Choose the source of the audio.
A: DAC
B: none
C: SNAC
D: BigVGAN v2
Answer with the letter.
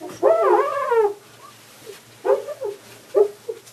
B